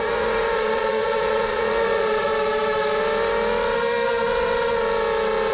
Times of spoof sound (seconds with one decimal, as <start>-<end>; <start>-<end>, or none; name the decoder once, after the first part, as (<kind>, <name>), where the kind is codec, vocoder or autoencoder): 0.0-2.3 (vocoder, Vocos)